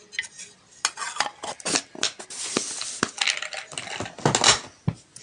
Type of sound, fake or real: real